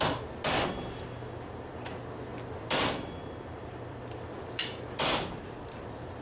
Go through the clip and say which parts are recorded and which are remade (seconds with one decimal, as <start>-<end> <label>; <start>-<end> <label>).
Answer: 0.0-2.3 recorded; 2.3-6.2 remade